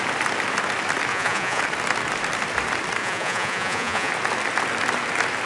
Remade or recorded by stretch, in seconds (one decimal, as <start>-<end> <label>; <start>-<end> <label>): 0.0-1.1 recorded; 1.1-1.6 remade; 1.6-3.0 recorded; 3.0-4.1 remade; 4.1-5.5 recorded